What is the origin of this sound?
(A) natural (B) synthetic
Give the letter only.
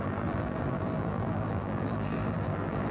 B